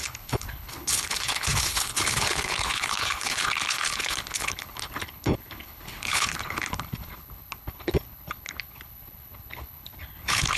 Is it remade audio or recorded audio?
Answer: remade